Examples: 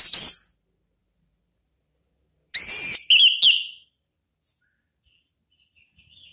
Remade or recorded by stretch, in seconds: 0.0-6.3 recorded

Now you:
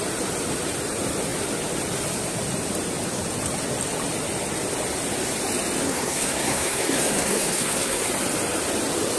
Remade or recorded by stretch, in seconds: 0.0-5.8 recorded; 5.8-8.1 remade; 8.1-9.2 recorded

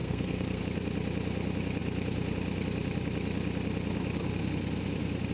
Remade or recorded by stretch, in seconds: 0.0-0.6 remade; 0.6-5.3 recorded

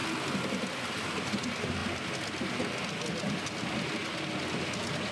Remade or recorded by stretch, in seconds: 0.0-5.1 recorded

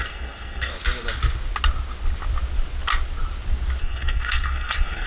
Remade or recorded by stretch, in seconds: 0.0-0.7 remade; 0.7-3.8 recorded; 3.8-5.1 remade

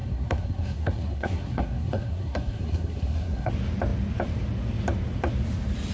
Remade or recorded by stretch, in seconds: 0.0-3.5 remade; 3.5-5.9 recorded